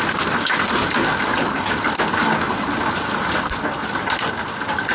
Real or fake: real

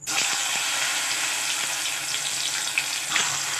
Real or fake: real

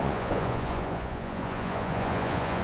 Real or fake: fake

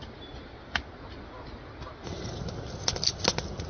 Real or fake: real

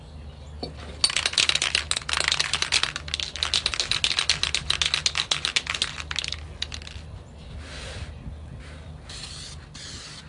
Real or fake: real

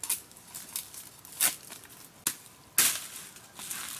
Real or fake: real